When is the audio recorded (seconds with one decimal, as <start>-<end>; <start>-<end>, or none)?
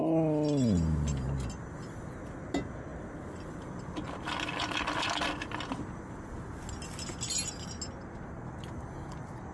0.0-9.5